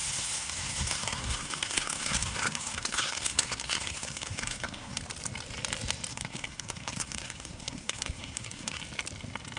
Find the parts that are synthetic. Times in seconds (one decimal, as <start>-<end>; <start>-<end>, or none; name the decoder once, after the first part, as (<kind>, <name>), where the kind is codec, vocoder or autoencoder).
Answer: 0.0-5.0 (codec, SNAC); 6.1-8.8